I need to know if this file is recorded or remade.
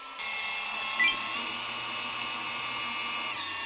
recorded